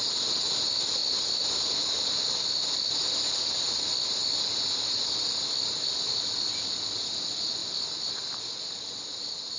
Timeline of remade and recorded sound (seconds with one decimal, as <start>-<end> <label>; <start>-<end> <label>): 0.0-9.6 recorded